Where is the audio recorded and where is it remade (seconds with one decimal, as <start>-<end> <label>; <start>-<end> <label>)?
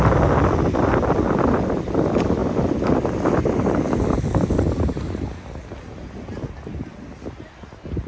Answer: 0.0-8.1 recorded